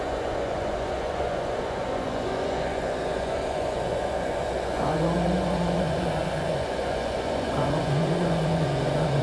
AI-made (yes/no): yes